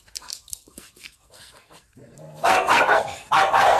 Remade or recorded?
remade